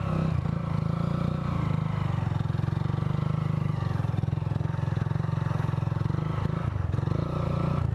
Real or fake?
real